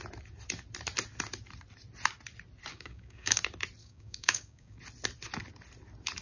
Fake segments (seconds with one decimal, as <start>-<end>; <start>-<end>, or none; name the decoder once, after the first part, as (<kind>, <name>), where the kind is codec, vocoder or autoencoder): 2.7-3.4 (codec, DAC); 3.8-4.8